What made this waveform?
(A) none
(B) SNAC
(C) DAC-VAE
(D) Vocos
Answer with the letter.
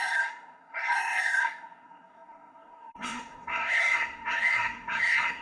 B